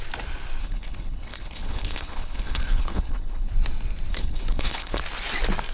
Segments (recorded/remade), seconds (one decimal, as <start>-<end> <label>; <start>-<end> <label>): 0.0-0.6 recorded; 0.6-3.5 remade; 3.5-4.1 recorded; 4.1-5.0 remade; 5.0-5.7 recorded